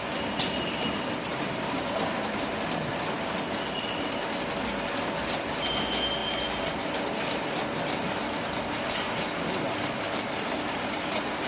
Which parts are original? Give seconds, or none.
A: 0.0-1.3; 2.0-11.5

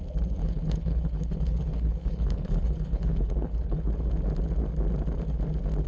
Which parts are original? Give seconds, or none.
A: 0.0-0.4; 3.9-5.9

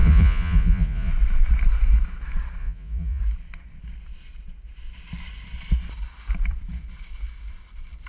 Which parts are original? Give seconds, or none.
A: 1.1-2.6; 3.2-8.1

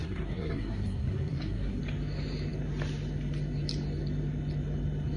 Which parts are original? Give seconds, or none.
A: 1.8-5.2

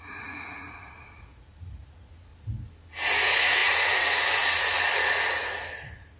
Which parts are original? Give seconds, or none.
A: 2.3-3.2

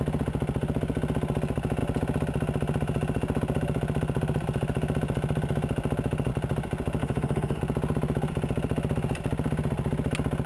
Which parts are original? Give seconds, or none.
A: 0.0-7.0; 7.6-10.5